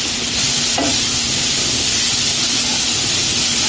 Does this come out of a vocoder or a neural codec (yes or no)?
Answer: no